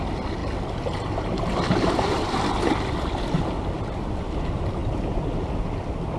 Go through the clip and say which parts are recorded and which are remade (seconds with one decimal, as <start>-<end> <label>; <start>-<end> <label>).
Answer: 0.0-6.2 recorded